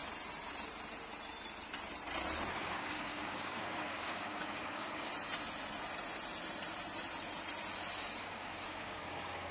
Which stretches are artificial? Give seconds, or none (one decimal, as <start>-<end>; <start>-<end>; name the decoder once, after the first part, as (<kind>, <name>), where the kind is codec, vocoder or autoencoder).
2.5-5.1 (codec, DAC); 8.2-9.5